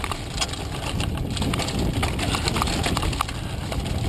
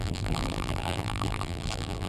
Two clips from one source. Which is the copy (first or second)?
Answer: second